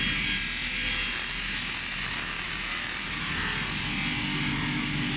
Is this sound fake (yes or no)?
no